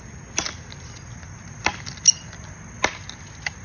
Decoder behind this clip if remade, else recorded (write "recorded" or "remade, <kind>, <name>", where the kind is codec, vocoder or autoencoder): recorded